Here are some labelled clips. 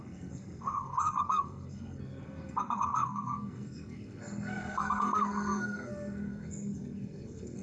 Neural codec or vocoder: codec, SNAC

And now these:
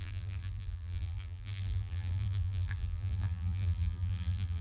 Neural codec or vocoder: vocoder, BigVGAN v2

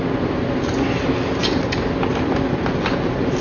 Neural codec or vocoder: none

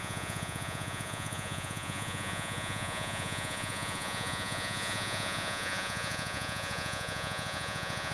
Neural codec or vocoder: vocoder, Vocos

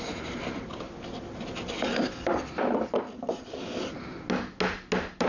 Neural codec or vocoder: none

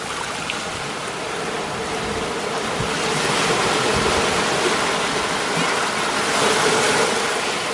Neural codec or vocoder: none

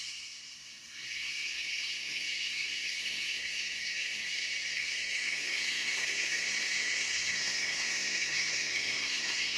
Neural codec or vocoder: codec, SNAC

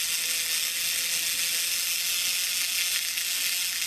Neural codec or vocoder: none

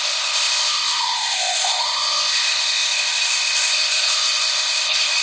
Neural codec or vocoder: codec, ZipCodec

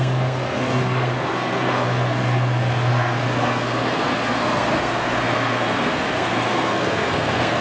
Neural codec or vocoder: codec, SNAC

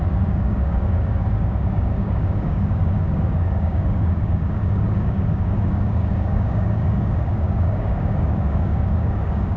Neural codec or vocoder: codec, DAC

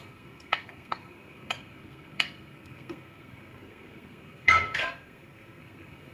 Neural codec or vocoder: codec, SNAC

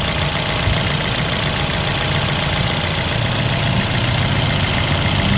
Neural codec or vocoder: none